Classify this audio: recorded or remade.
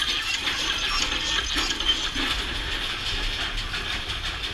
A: recorded